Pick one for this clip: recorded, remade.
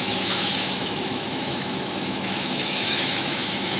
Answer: remade